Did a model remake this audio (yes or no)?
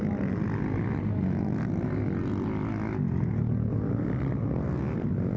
no